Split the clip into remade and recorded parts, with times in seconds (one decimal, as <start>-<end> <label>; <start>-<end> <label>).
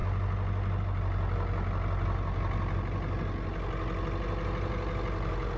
0.0-5.6 recorded